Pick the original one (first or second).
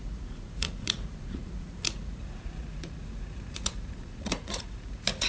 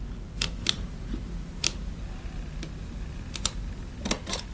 second